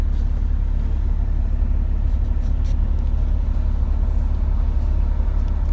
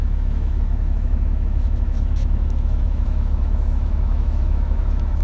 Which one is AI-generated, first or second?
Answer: second